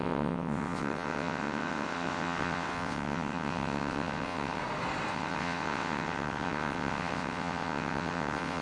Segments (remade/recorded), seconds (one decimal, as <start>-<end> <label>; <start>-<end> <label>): 0.0-4.6 remade; 4.6-5.1 recorded; 5.1-8.6 remade